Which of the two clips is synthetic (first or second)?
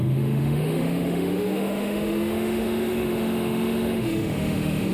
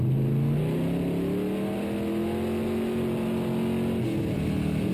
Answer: first